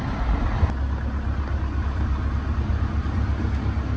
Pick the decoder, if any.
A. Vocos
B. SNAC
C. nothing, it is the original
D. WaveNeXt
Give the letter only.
C